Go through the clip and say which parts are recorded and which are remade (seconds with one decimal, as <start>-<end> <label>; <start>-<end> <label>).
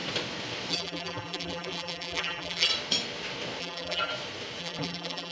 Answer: 0.0-0.7 recorded; 0.7-2.7 remade; 2.7-3.6 recorded; 3.6-4.1 remade; 4.1-4.6 recorded; 4.6-5.3 remade